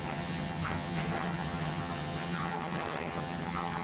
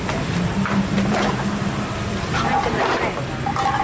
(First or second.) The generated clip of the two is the first